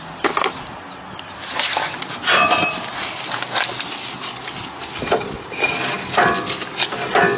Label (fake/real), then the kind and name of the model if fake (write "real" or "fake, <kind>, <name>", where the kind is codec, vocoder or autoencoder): real